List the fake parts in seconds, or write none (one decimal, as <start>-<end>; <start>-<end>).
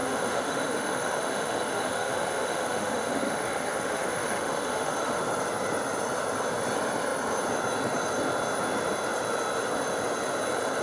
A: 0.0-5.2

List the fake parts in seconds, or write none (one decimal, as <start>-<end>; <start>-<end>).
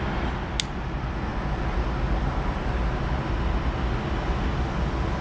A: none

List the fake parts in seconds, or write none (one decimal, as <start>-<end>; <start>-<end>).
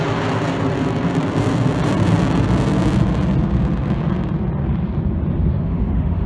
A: 5.5-6.3